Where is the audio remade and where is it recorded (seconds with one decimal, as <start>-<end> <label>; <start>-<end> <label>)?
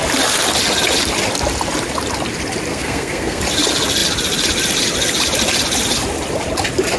0.0-2.7 recorded; 2.7-3.4 remade; 3.4-7.0 recorded